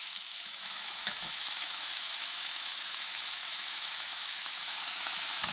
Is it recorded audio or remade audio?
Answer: remade